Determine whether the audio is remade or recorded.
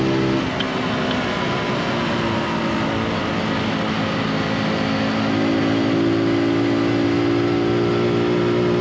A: recorded